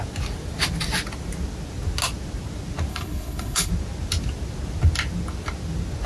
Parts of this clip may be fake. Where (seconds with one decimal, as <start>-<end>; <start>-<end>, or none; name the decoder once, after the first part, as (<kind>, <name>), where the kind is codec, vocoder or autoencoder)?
2.9-3.7 (codec, HILCodec)